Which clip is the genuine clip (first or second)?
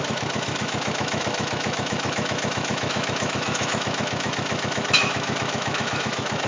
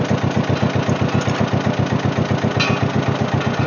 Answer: second